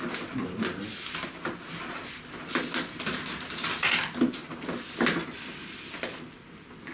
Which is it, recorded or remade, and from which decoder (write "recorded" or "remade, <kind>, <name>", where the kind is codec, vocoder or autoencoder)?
recorded